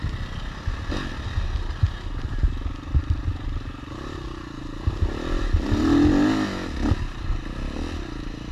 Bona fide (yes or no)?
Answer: yes